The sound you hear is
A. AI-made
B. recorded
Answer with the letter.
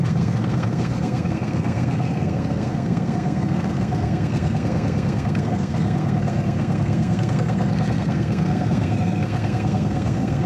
A